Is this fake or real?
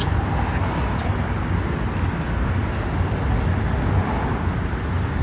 real